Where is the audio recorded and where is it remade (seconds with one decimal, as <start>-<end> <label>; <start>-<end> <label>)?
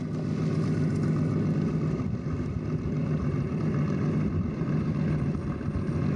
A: 0.0-3.0 recorded; 3.0-5.4 remade; 5.4-6.2 recorded